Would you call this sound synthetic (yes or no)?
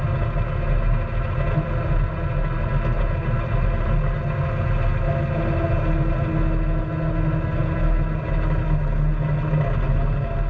no